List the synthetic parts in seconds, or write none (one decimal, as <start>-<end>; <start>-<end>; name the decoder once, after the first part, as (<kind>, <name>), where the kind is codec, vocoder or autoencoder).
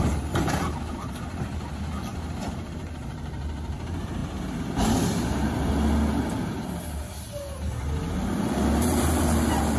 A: 0.0-4.2 (vocoder, BigVGAN v2); 8.4-9.8